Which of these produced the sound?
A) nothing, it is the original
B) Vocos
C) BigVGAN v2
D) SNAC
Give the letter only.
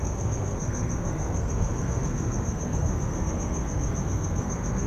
D